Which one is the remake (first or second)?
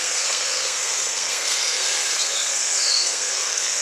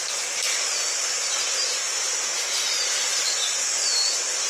first